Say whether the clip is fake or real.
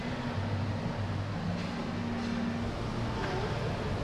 real